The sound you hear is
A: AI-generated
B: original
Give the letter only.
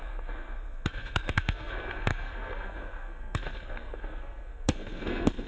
A